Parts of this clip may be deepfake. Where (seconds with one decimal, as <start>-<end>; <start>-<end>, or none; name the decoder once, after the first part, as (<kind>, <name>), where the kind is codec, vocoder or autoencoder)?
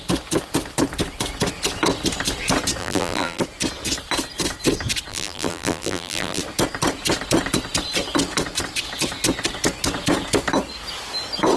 2.8-3.4 (vocoder, BigVGAN v2); 5.1-6.4